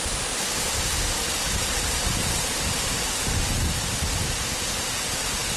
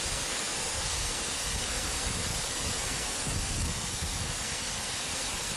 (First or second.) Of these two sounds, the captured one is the first